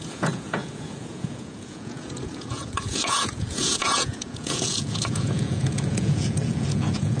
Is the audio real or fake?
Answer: fake